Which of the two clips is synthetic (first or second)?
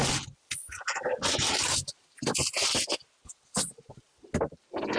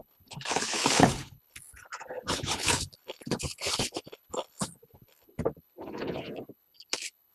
second